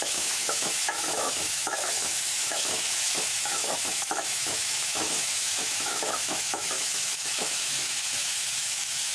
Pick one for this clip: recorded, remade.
remade